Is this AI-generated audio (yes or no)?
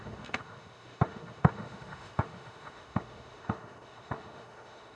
yes